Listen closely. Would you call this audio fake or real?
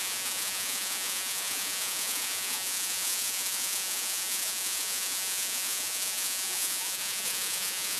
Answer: fake